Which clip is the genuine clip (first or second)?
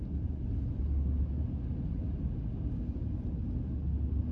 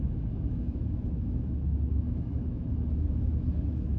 first